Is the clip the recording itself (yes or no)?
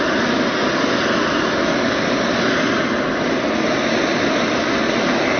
yes